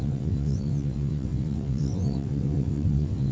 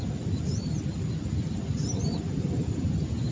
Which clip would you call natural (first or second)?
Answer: second